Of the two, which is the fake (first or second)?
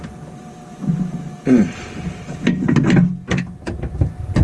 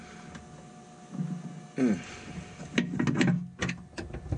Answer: first